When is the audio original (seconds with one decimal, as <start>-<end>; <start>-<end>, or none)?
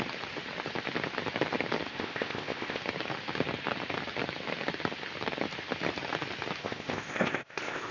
0.0-1.9; 2.8-6.6